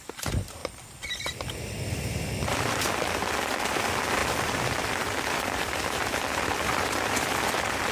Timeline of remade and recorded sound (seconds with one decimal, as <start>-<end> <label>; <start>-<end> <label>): 0.0-7.9 remade

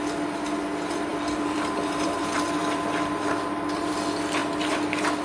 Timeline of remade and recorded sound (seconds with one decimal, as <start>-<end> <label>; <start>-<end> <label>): 0.0-1.1 recorded; 1.1-2.2 remade; 2.2-2.6 recorded; 2.6-3.9 remade; 3.9-4.4 recorded; 4.4-5.2 remade

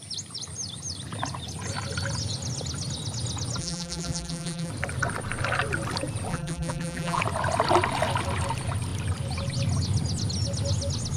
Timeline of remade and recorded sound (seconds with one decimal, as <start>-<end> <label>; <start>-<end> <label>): 0.0-3.6 recorded; 3.6-4.7 remade; 4.7-6.3 recorded; 6.3-7.2 remade; 7.2-11.2 recorded

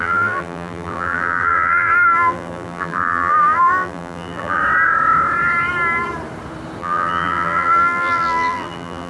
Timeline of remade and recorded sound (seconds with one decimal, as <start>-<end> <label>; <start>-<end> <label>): 0.0-4.6 remade; 4.6-6.8 recorded; 6.8-9.1 remade

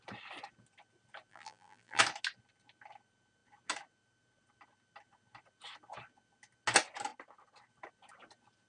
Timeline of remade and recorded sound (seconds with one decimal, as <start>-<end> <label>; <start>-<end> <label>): 0.0-1.3 recorded; 1.3-2.0 remade; 2.0-8.7 recorded

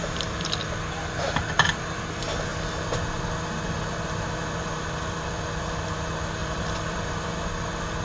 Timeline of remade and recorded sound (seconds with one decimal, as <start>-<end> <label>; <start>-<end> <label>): 0.0-6.4 recorded; 6.4-7.3 remade; 7.3-8.0 recorded

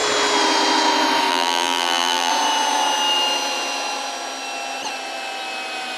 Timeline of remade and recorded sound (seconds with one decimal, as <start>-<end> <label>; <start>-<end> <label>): 0.0-1.3 recorded; 1.3-2.3 remade; 2.3-6.0 recorded